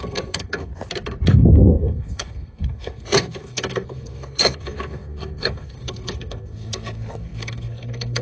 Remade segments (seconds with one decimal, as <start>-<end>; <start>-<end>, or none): 0.0-0.7; 1.3-8.2